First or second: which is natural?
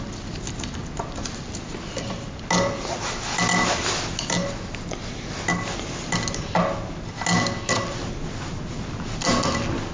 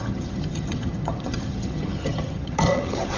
first